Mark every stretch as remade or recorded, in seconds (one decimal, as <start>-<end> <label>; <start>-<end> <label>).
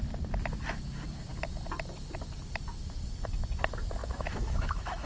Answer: 0.0-4.0 recorded; 4.0-5.1 remade